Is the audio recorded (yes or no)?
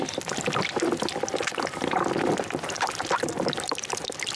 yes